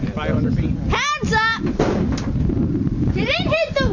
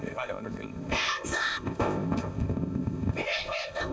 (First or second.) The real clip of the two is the first